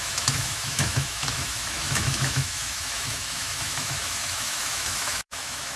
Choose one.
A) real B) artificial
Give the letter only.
B